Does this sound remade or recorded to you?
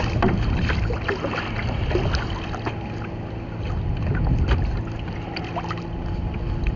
recorded